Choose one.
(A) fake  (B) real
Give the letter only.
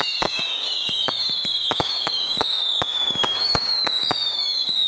A